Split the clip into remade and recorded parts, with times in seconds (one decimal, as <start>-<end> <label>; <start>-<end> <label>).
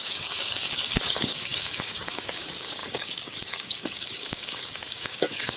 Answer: 0.0-5.6 remade